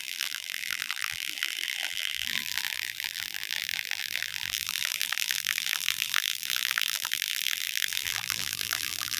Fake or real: fake